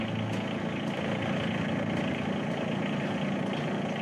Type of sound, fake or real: real